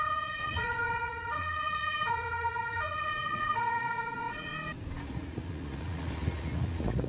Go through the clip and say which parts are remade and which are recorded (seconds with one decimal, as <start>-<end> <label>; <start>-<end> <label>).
0.0-4.5 remade; 4.5-5.0 recorded; 5.0-7.1 remade